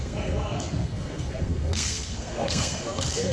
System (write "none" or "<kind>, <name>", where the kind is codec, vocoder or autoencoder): codec, SNAC